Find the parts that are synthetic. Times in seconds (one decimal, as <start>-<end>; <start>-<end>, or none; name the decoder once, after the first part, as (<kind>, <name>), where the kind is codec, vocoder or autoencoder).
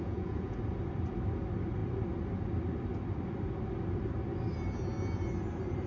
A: 0.0-0.6 (vocoder, Vocos)